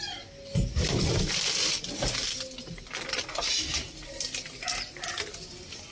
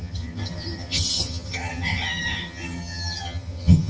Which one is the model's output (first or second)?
second